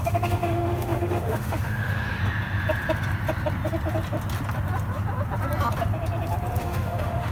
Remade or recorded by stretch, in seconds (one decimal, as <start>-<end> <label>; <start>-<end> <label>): 0.0-2.2 remade; 2.2-6.6 recorded; 6.6-7.3 remade